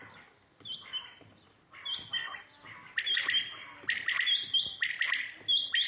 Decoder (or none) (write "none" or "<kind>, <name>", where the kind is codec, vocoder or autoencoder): none